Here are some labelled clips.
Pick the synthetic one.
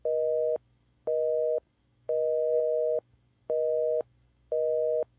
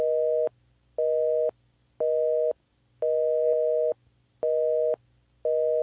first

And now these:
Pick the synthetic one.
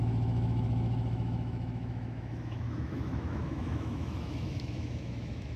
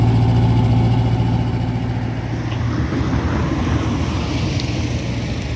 first